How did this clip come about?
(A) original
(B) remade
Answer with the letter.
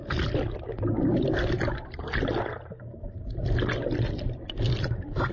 A